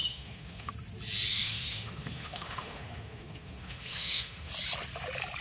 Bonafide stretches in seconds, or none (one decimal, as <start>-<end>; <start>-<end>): 0.7-1.3; 4.5-5.4